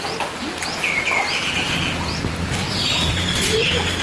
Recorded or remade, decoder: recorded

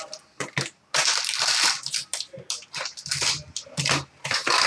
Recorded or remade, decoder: recorded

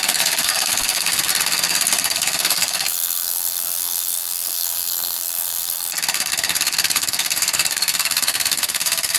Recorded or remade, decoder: remade, codec, SNAC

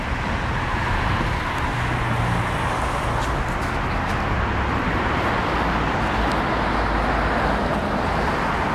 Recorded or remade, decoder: recorded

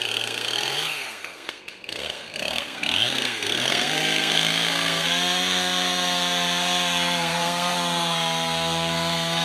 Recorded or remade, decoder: remade, codec, SNAC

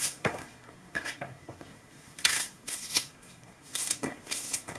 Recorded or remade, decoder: remade, codec, SNAC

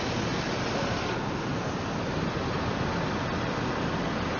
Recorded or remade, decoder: recorded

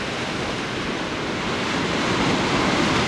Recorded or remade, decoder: recorded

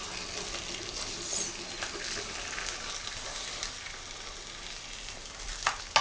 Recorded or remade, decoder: recorded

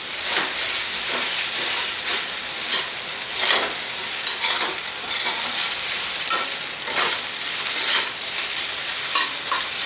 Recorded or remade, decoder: recorded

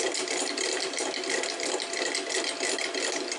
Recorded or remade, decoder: recorded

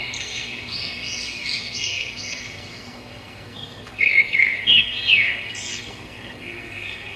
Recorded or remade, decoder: remade, codec, SNAC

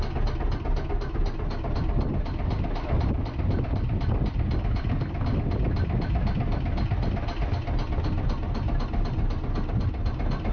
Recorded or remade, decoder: recorded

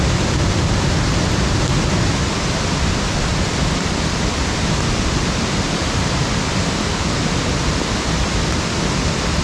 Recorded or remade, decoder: recorded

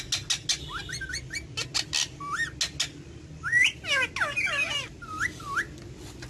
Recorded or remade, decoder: recorded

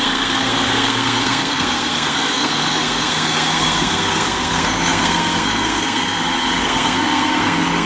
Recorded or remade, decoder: remade, codec, SNAC